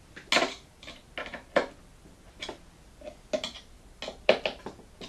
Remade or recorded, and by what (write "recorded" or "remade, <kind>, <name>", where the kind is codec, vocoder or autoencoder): recorded